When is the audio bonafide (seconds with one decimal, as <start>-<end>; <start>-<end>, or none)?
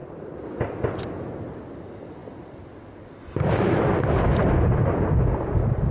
0.0-5.9